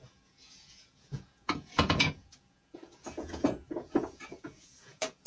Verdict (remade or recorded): remade